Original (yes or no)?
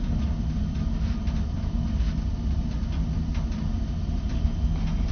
yes